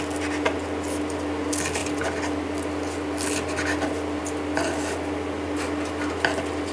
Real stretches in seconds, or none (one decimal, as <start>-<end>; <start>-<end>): 0.0-6.7